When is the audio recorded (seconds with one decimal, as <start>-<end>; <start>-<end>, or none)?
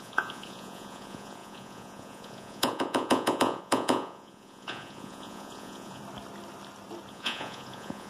6.0-7.1